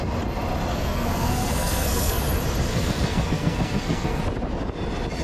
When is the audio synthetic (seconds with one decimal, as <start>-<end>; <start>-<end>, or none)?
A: 0.7-2.2; 2.7-4.2

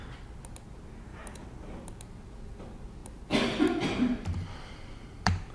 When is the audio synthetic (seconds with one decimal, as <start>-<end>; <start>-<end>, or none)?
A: 1.1-1.8

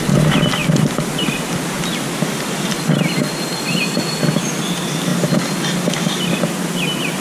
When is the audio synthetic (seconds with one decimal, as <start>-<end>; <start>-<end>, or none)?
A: none

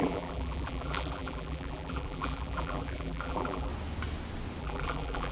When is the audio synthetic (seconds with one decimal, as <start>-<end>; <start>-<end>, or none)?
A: 0.0-3.7; 4.6-5.3

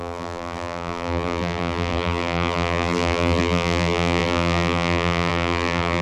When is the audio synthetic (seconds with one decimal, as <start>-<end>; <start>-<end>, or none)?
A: 0.0-6.0

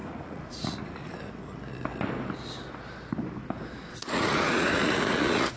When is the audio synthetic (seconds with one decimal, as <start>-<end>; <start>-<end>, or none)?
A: 0.0-1.3; 3.9-5.6